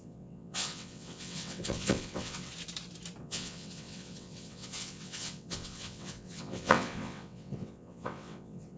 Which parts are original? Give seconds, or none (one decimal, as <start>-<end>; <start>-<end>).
2.5-3.2